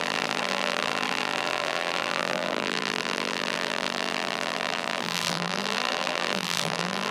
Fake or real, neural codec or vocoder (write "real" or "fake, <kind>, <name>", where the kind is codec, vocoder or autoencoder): fake, vocoder, BigVGAN v2